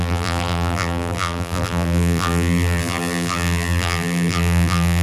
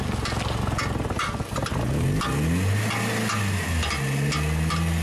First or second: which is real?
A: second